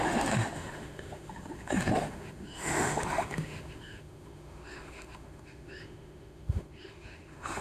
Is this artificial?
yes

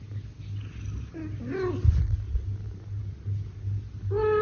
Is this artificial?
no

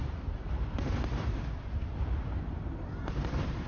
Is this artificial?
yes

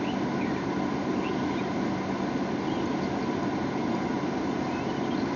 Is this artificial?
no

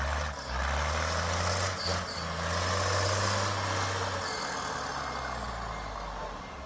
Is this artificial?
no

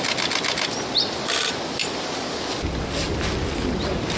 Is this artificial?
no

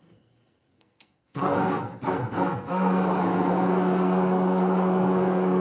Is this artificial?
yes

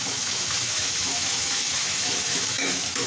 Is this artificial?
yes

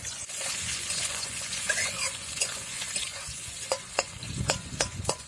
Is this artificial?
yes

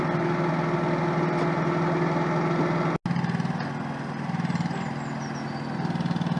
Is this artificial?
no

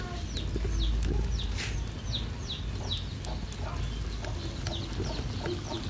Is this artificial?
no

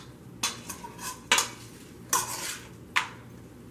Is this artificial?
no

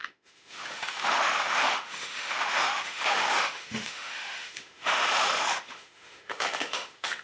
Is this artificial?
yes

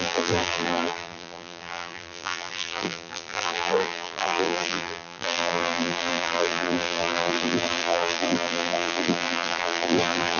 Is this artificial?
yes